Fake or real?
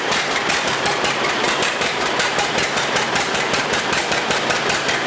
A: fake